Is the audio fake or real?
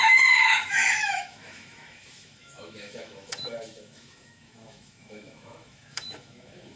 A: fake